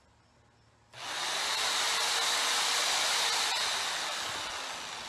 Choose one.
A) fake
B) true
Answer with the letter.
B